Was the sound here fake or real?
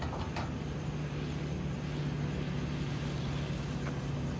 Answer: real